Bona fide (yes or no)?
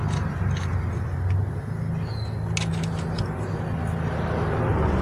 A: yes